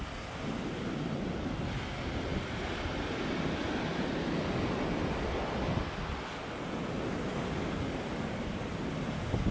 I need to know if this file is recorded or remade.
recorded